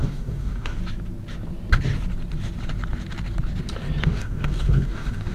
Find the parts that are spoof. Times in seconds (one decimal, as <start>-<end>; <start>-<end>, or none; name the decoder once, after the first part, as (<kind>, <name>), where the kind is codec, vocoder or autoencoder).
0.0-0.8 (codec, DAC); 4.0-5.3